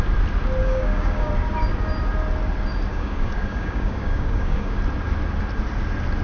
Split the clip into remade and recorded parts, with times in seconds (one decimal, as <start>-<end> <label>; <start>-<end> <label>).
0.0-0.6 recorded; 0.6-1.3 remade; 1.3-2.9 recorded; 2.9-4.8 remade; 4.8-6.2 recorded